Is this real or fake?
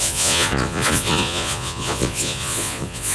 fake